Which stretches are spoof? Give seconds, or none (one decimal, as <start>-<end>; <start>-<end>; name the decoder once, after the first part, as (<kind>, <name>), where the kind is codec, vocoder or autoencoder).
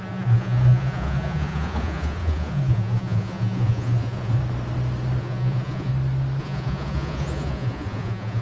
0.0-4.4 (vocoder, Vocos); 5.2-5.9; 6.4-8.4